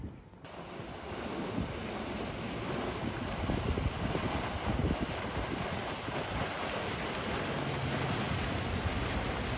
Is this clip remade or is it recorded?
recorded